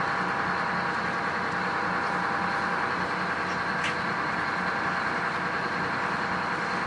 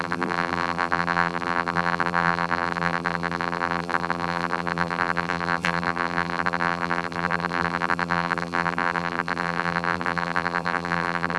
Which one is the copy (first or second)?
second